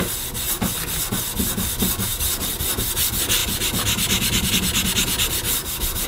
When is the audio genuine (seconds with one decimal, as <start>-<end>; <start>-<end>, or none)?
0.0-3.4; 4.5-6.1